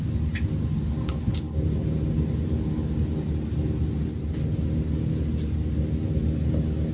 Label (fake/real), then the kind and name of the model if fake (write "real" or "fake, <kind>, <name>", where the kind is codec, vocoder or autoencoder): real